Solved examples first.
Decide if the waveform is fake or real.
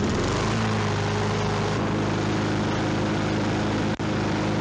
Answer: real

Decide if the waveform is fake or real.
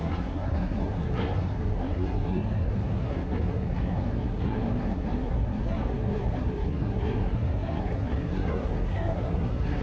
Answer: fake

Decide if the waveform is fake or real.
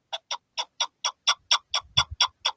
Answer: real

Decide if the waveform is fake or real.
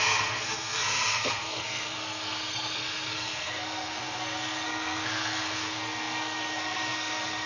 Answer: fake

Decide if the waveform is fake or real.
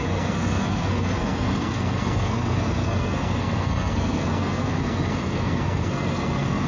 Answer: fake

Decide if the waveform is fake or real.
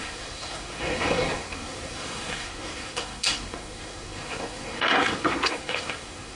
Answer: fake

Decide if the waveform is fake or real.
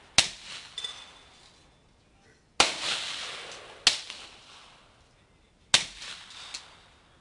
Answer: real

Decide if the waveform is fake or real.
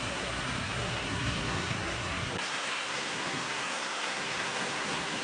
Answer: fake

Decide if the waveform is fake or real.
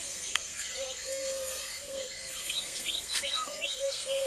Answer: fake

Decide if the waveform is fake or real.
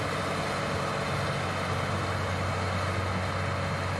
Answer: real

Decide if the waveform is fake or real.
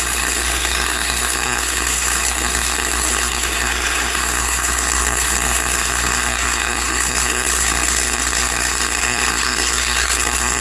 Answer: fake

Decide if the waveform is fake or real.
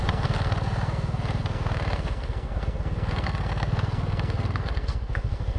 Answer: fake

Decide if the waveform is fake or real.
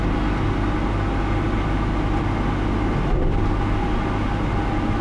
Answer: real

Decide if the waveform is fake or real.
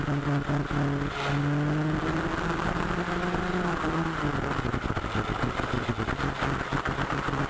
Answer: real